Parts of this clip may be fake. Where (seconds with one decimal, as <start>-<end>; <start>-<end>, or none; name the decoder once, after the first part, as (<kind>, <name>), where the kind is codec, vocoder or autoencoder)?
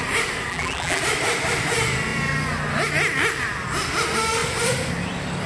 0.5-1.0 (vocoder, BigVGAN v2)